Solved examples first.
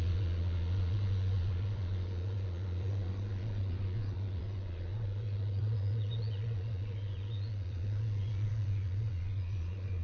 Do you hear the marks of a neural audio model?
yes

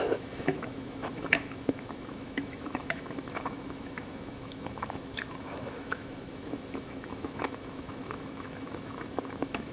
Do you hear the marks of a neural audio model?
yes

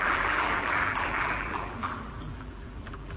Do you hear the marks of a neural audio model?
yes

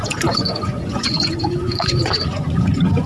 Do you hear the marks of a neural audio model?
yes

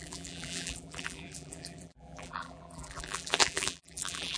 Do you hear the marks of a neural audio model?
yes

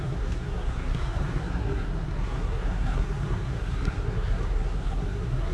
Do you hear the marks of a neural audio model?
yes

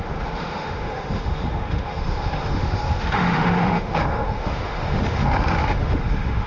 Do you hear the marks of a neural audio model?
yes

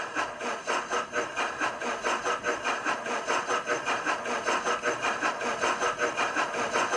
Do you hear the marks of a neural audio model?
no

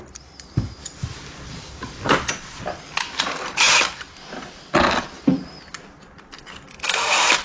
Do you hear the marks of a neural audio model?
no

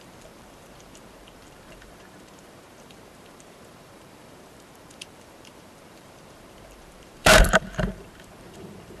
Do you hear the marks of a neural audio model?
yes